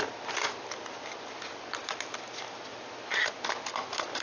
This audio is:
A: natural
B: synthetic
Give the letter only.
A